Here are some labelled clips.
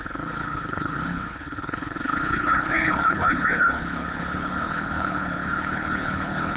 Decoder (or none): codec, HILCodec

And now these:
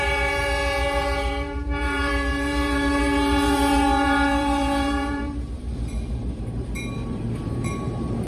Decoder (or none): vocoder, BigVGAN v2